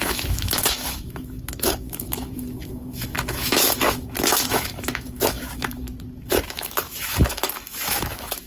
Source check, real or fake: fake